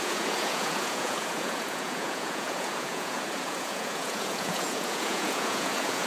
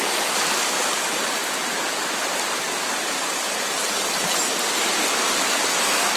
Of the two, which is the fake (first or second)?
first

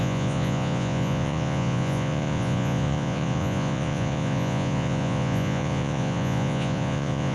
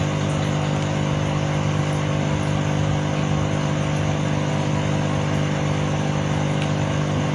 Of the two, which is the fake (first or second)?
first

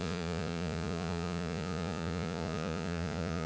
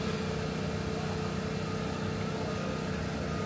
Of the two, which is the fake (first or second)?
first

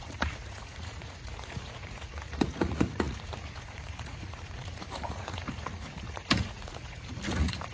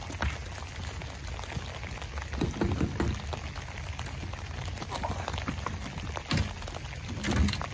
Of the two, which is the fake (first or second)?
first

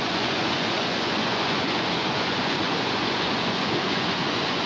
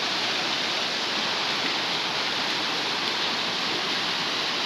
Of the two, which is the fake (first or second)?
first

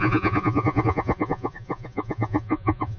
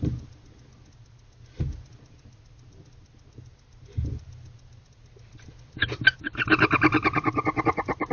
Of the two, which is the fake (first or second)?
first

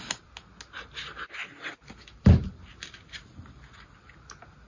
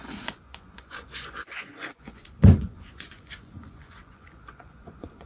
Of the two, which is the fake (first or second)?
second